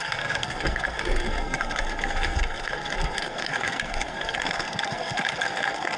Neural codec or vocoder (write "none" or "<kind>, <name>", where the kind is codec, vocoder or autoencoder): codec, SNAC